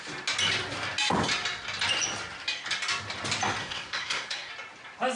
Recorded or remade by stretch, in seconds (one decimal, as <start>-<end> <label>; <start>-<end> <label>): 0.0-3.6 recorded; 3.6-4.5 remade; 4.5-5.2 recorded